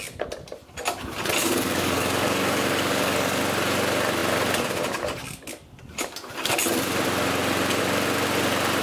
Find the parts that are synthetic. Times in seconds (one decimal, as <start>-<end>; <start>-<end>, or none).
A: 1.4-3.4